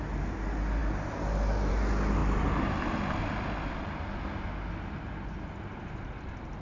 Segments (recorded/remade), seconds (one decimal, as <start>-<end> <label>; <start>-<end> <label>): 0.0-6.6 recorded